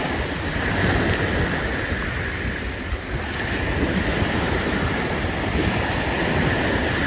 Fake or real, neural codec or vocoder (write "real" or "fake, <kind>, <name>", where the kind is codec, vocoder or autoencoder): real